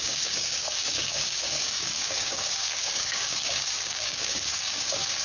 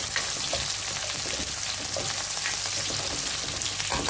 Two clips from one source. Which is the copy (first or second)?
first